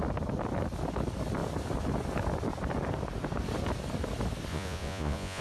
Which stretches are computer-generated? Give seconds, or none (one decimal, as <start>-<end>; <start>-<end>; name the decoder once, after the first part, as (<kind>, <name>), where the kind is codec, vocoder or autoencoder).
4.5-5.4 (vocoder, Vocos)